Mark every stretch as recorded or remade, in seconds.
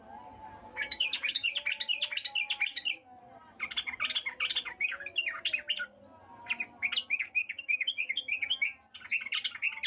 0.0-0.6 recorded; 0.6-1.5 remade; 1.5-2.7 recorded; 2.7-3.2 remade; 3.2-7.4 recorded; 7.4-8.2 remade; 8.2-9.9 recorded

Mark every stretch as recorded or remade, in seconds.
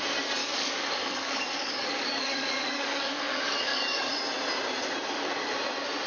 0.0-0.4 recorded; 0.4-4.1 remade; 4.1-6.1 recorded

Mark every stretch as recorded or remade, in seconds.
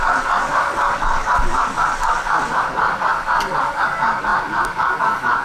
0.0-5.4 remade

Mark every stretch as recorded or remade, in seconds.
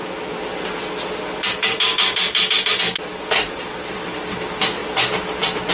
0.0-5.7 recorded